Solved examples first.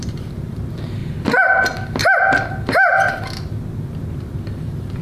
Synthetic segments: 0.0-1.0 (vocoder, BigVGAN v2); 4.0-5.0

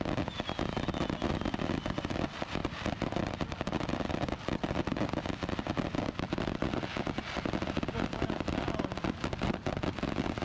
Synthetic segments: 2.6-3.4 (vocoder, BigVGAN v2)